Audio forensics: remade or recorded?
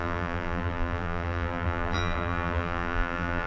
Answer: remade